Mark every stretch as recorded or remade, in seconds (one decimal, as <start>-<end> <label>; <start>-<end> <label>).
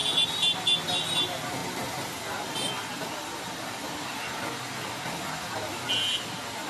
0.0-6.7 recorded